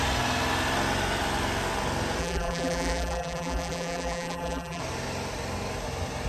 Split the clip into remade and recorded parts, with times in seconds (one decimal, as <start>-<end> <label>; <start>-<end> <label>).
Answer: 0.0-2.2 recorded; 2.2-4.8 remade; 4.8-6.3 recorded